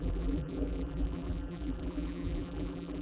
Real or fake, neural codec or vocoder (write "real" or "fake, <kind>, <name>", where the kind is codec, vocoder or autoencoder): fake, vocoder, BigVGAN v2